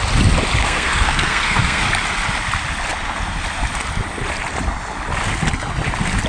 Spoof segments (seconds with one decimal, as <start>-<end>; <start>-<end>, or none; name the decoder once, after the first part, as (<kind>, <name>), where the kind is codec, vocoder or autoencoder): 0.6-1.8 (codec, SNAC)